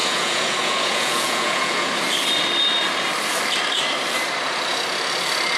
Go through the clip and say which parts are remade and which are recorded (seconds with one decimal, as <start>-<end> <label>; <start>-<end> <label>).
0.0-1.9 remade; 1.9-5.6 recorded